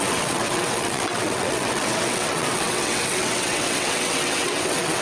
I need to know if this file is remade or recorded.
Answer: remade